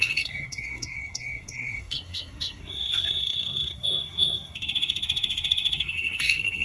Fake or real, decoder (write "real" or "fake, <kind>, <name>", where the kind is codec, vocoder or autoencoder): fake, codec, SNAC